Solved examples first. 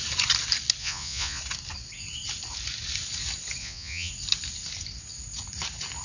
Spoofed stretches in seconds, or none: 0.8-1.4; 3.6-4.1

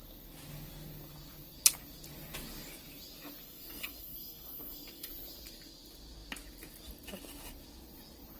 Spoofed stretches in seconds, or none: 3.4-5.1

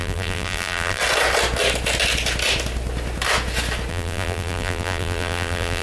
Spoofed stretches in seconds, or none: 0.0-1.0; 3.9-5.8